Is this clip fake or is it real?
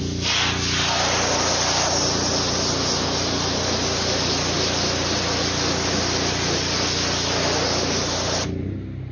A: real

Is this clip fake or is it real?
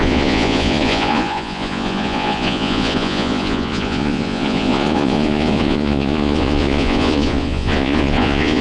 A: fake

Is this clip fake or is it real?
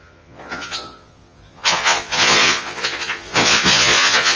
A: fake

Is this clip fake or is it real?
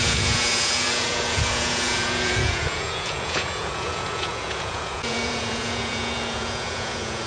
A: fake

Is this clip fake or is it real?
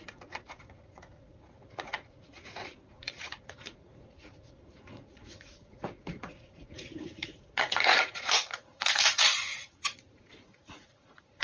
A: fake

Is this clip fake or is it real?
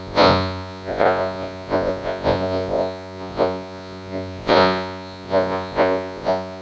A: fake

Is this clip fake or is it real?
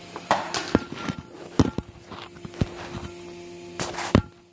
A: real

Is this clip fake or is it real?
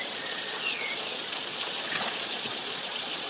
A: fake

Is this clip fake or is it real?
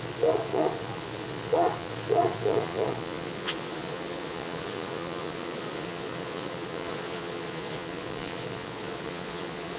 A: fake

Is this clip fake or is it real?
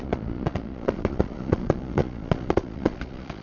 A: fake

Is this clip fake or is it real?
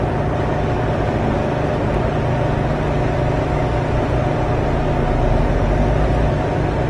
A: real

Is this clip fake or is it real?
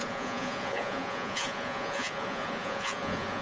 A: fake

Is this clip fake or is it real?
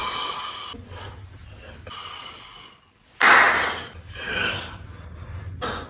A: real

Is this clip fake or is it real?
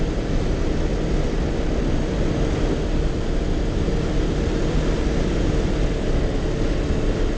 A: real